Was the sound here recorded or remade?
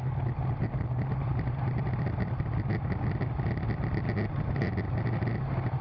recorded